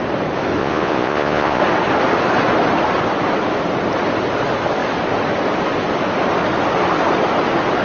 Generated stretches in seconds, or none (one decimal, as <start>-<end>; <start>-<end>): 0.6-1.6

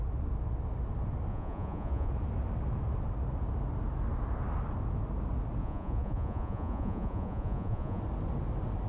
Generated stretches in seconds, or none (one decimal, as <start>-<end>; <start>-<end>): 1.3-2.1; 5.6-8.0

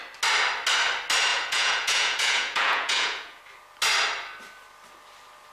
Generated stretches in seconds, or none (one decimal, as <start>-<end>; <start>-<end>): 1.3-3.4